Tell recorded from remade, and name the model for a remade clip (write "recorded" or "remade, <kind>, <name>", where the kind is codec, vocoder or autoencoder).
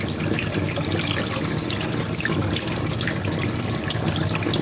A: recorded